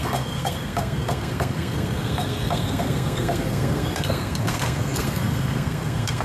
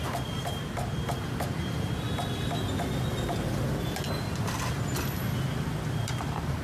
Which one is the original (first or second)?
second